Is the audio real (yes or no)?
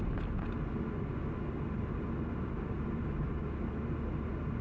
yes